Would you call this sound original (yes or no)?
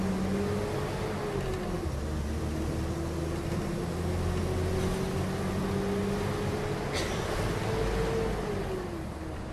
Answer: yes